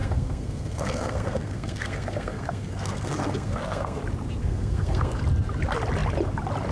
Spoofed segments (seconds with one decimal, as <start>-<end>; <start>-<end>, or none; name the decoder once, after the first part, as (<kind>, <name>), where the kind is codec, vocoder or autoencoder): 0.0-4.0 (codec, SNAC); 4.4-5.2